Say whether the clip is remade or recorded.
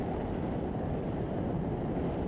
recorded